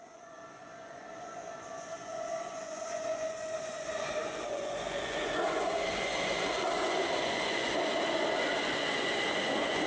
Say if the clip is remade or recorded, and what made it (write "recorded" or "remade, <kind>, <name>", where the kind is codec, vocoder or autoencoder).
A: remade, vocoder, Vocos